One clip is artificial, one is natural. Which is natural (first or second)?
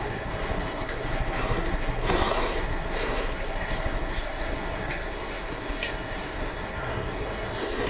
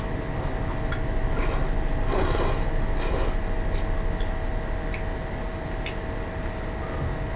second